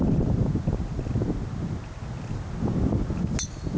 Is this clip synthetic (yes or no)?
no